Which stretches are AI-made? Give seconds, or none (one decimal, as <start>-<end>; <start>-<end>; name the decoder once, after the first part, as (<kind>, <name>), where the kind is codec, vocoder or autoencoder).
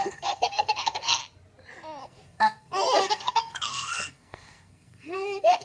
0.0-1.2 (codec, SNAC); 2.0-5.6